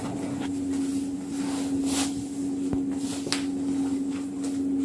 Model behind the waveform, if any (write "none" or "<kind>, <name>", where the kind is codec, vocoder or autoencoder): none